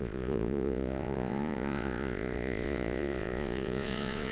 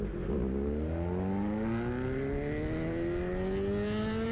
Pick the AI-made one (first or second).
first